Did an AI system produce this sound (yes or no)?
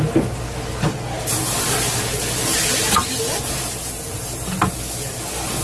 no